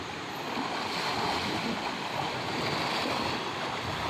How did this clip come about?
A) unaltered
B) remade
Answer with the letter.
A